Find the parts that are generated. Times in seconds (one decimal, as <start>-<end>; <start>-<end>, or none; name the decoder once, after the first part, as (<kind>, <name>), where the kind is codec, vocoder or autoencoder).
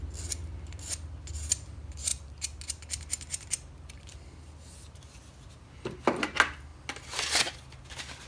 none